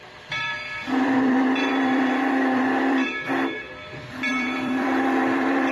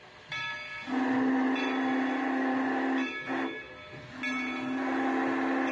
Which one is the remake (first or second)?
first